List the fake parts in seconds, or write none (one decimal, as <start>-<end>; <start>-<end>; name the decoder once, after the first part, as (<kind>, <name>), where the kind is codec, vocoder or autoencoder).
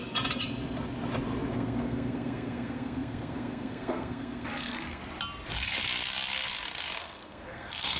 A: 1.5-5.0 (codec, SNAC); 7.0-8.0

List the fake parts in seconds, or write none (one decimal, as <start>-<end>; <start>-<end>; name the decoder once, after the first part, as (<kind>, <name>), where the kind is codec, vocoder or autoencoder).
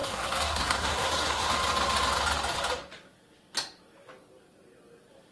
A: 0.0-1.5 (codec, SNAC)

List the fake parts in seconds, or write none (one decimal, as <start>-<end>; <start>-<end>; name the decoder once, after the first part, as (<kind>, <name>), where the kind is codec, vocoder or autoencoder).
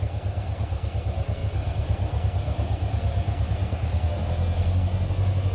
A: 0.0-5.5 (codec, SNAC)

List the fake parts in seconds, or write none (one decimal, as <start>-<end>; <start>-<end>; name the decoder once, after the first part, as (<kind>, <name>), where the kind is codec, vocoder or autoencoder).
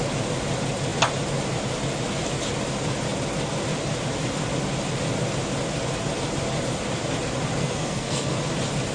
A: 7.6-8.4 (codec, SNAC)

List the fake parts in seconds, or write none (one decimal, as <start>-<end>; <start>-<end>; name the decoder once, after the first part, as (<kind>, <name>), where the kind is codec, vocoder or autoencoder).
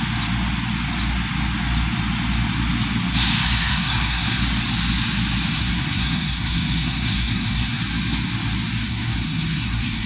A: 3.4-4.4 (codec, SNAC); 5.5-7.8; 8.8-10.1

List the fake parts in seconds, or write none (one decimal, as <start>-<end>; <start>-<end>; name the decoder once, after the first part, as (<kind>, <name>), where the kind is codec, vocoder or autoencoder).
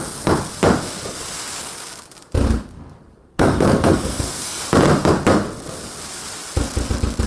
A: 3.3-4.6 (codec, SNAC)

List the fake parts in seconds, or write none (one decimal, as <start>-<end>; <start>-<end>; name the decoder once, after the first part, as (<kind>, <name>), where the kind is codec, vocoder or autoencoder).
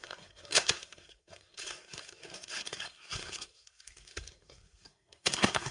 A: 0.0-5.7 (codec, SNAC)